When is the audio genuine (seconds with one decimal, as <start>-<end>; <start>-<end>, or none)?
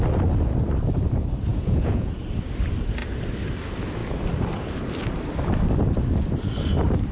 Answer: 0.0-1.5; 2.1-7.1